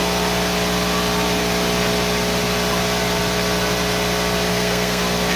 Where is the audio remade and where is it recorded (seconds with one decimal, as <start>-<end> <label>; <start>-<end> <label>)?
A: 0.0-4.5 recorded; 4.5-5.0 remade; 5.0-5.4 recorded

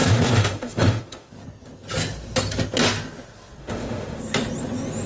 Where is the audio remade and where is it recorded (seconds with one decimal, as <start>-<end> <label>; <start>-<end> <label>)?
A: 0.0-1.3 remade; 1.3-3.6 recorded; 3.6-4.2 remade; 4.2-5.1 recorded

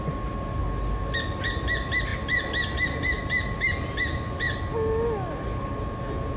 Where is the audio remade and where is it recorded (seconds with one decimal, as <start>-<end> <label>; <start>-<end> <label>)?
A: 0.0-2.1 recorded; 2.1-4.6 remade; 4.6-6.4 recorded